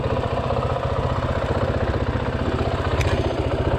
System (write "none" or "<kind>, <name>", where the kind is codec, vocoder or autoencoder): none